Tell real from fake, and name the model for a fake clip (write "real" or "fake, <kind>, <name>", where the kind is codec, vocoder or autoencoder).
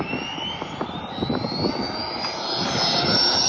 real